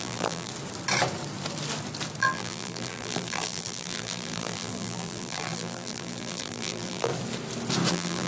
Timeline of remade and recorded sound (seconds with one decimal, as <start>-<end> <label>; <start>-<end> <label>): 0.0-0.5 remade; 0.5-2.2 recorded; 2.2-7.1 remade; 7.1-7.9 recorded; 7.9-8.3 remade